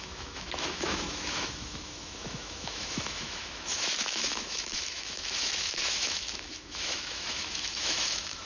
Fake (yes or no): yes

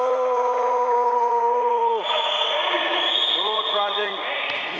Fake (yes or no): yes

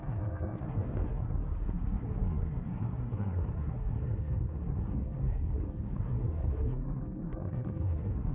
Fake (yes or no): yes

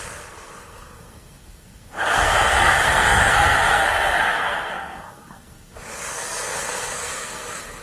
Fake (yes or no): yes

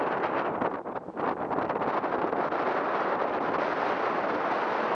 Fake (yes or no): no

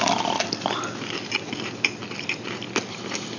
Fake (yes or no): no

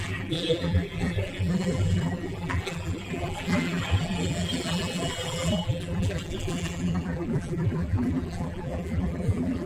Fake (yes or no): yes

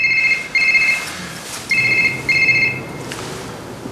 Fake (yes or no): no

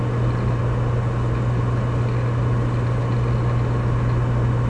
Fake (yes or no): no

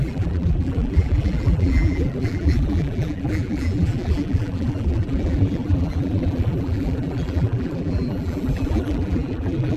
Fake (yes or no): yes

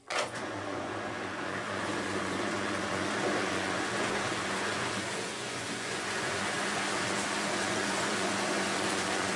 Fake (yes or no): yes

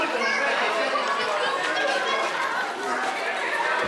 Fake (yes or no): no